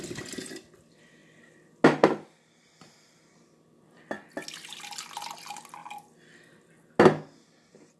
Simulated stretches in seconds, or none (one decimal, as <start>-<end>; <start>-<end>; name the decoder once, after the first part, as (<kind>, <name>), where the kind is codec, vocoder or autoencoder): none